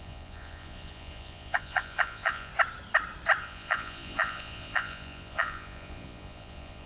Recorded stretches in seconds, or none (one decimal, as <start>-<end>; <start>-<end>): 2.5-3.4